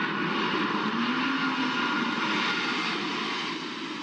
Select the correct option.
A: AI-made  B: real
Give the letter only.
B